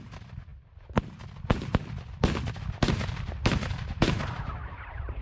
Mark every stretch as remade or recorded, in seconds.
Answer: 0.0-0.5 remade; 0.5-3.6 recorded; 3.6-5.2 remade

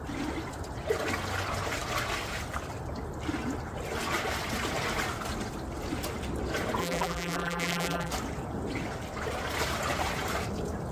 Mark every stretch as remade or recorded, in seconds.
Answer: 0.0-6.8 recorded; 6.8-8.1 remade; 8.1-10.9 recorded

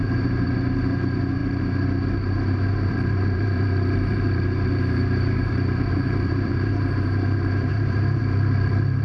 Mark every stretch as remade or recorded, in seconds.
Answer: 0.0-9.0 remade

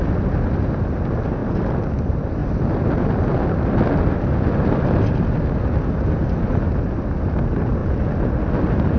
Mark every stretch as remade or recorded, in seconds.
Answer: 0.0-9.0 recorded

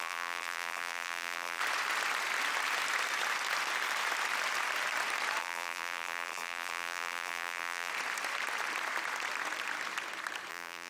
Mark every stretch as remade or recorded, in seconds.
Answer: 0.0-1.6 remade; 1.6-5.4 recorded; 5.4-7.9 remade; 7.9-10.5 recorded; 10.5-10.9 remade

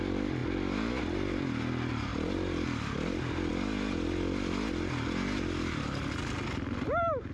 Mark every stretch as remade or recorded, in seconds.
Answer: 0.0-7.3 recorded